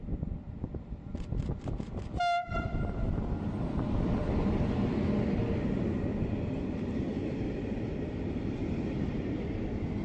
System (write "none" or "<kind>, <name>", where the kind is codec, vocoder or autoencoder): none